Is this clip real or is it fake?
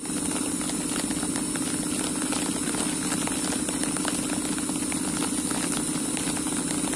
real